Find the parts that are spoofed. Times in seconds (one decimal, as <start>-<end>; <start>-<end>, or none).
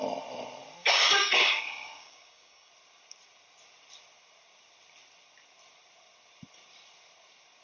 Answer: 0.8-2.7